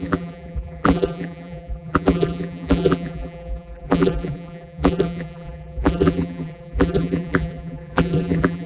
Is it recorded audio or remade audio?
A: remade